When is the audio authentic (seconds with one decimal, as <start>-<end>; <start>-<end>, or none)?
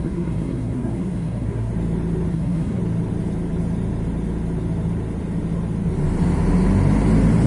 1.7-2.3; 2.8-7.5